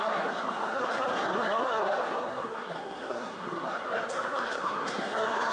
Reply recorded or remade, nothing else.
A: remade